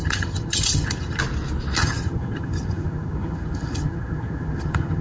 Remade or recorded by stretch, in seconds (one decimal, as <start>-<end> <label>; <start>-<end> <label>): 0.0-1.2 remade; 1.2-1.8 recorded; 1.8-5.0 remade